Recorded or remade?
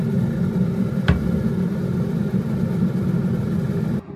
remade